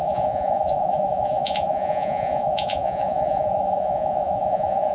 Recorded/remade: remade